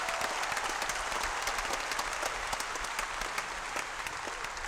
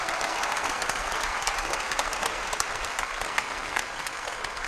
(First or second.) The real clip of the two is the first